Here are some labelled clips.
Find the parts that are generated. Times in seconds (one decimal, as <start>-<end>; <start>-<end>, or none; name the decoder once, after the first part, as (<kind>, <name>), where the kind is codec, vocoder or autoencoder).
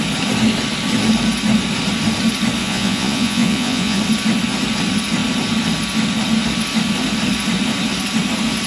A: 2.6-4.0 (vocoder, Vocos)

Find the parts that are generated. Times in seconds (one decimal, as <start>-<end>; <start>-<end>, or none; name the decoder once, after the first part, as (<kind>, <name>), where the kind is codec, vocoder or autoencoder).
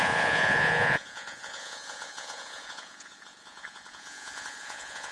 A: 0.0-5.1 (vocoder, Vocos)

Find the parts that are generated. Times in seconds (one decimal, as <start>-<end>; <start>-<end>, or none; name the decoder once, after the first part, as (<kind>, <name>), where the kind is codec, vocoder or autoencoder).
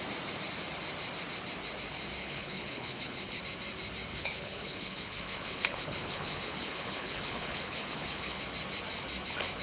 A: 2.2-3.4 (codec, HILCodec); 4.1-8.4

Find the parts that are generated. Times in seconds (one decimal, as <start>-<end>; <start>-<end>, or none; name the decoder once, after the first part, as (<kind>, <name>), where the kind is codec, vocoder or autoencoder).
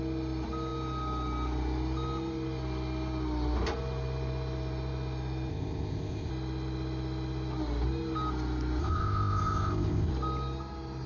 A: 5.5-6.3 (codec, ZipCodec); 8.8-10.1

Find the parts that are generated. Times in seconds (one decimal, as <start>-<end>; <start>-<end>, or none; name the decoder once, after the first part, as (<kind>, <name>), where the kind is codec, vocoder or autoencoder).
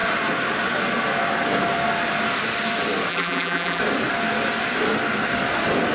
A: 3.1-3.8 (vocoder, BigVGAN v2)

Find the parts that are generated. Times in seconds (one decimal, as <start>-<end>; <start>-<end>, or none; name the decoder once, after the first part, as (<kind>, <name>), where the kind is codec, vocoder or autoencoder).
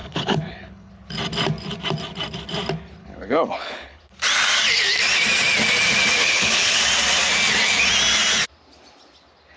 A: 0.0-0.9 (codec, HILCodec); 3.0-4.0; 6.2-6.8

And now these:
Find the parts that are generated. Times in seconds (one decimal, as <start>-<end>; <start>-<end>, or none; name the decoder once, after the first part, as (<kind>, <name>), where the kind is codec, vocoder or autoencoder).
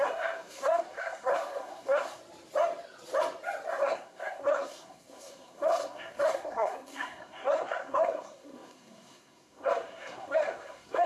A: 0.0-2.2 (codec, SNAC); 3.7-11.1